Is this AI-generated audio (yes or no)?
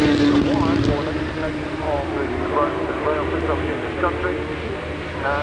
no